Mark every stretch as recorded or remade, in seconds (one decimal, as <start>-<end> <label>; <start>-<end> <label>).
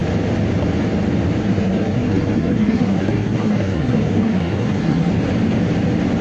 0.0-1.4 recorded; 1.4-5.1 remade; 5.1-6.2 recorded